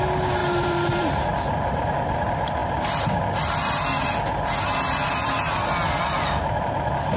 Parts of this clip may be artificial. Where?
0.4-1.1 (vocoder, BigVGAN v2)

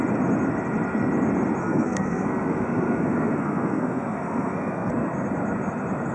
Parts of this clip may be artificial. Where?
1.6-4.9 (codec, SNAC)

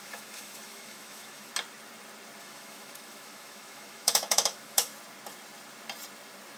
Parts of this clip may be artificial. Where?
0.0-1.5 (autoencoder, DAC-VAE); 2.4-4.9

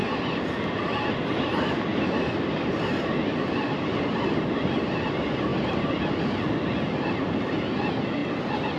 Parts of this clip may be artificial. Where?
5.5-6.0 (vocoder, BigVGAN v2)